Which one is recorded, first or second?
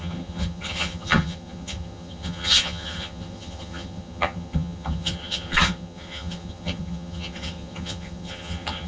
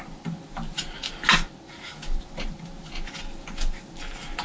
second